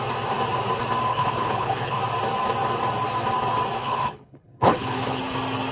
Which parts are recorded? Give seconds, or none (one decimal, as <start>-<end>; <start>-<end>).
0.0-1.1; 2.0-3.8; 5.2-5.7